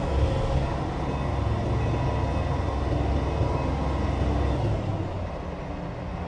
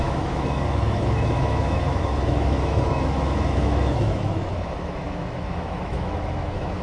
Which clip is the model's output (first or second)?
second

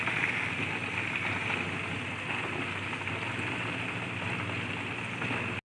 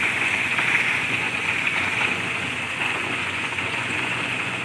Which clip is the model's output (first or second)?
second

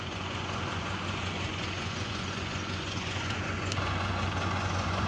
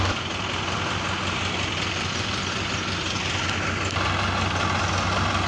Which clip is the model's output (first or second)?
first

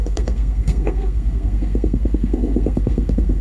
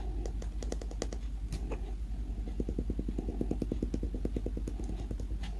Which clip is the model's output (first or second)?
first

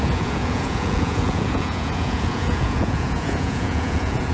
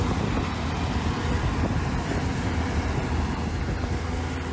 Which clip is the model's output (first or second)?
first